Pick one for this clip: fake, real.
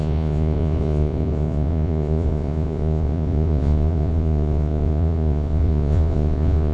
fake